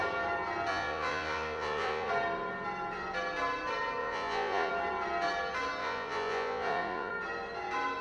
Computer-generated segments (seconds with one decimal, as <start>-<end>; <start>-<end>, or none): 0.7-2.1; 4.0-4.7; 5.8-7.1